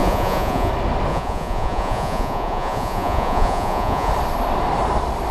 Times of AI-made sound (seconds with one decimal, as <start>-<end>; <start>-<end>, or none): 0.0-0.7; 1.1-4.1